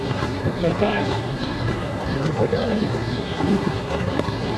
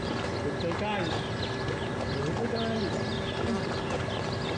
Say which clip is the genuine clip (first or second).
second